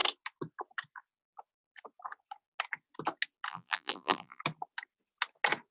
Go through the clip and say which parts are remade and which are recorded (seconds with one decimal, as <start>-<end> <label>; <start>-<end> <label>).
0.0-3.5 recorded; 3.5-4.4 remade; 4.4-5.7 recorded